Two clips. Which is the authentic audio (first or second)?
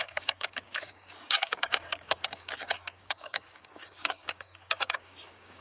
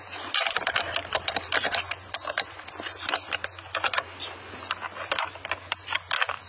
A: second